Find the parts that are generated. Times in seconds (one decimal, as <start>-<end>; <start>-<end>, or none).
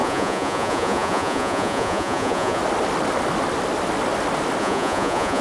0.0-2.6; 4.6-5.4